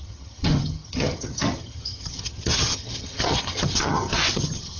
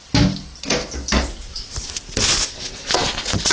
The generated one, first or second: first